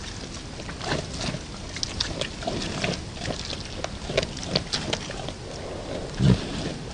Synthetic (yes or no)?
no